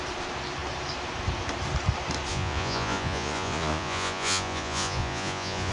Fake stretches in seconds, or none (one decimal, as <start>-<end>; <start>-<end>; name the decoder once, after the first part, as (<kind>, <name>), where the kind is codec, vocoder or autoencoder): 2.3-5.7 (vocoder, Vocos)